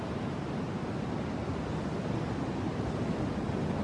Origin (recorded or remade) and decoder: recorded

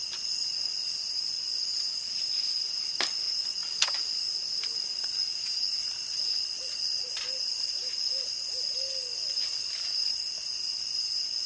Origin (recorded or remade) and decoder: recorded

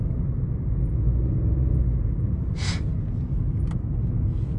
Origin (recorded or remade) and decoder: recorded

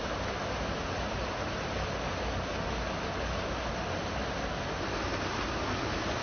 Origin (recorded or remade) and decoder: recorded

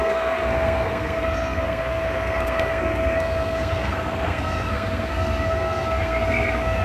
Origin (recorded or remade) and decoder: remade, codec, SNAC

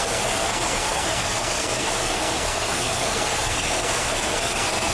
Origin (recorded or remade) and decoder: remade, codec, SNAC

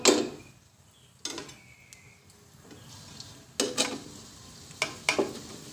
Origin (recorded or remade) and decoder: recorded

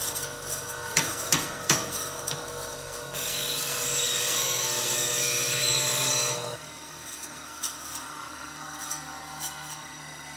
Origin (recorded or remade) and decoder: remade, codec, SNAC